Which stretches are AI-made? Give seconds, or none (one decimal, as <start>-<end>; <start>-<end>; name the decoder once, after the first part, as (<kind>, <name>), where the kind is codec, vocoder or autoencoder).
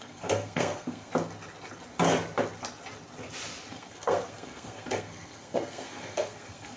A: 0.0-1.1 (codec, SNAC); 3.7-6.8